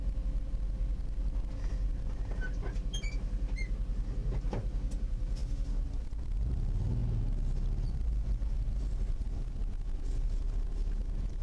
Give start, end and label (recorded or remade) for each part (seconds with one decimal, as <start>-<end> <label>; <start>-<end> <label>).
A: 0.0-11.4 recorded